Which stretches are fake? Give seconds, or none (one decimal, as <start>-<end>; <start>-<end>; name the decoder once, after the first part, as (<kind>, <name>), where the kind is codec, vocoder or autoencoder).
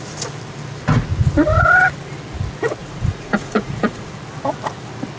2.8-4.1 (vocoder, Vocos)